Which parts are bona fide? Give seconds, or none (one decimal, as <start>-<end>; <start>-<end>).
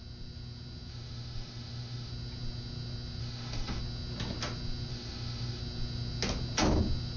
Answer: 0.0-0.9; 2.1-3.2; 3.8-4.9; 5.6-7.2